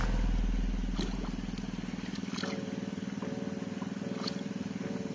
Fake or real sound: real